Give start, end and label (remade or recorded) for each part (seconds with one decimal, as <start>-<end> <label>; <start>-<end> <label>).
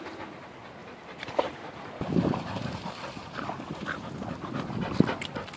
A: 0.0-0.8 recorded; 0.8-3.1 remade; 3.1-5.6 recorded